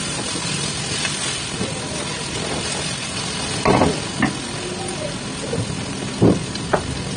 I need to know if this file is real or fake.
real